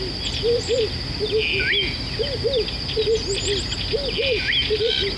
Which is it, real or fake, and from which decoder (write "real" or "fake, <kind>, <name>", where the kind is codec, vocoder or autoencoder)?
real